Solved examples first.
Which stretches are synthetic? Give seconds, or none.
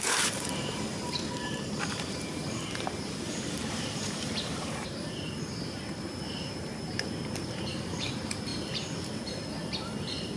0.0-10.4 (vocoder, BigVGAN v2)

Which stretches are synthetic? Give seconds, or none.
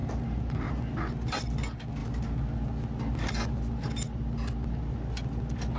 0.0-0.8 (vocoder, BigVGAN v2)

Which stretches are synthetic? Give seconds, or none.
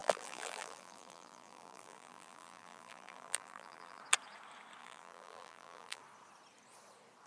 0.0-4.0 (vocoder, BigVGAN v2); 4.8-6.0